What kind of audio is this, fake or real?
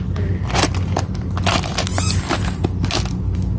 real